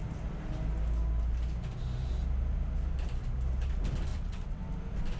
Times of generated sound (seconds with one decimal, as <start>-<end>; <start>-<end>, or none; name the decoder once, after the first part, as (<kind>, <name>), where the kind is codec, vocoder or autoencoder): 4.1-4.6 (vocoder, WaveNeXt)